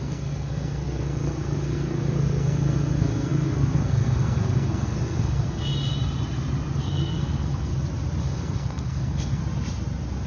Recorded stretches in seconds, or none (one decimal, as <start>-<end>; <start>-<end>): 5.7-6.8; 7.7-8.2; 9.4-10.3